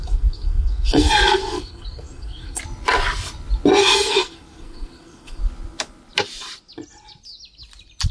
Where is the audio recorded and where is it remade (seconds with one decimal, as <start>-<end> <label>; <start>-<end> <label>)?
0.0-2.6 remade; 2.6-3.8 recorded; 3.8-5.4 remade; 5.4-8.1 recorded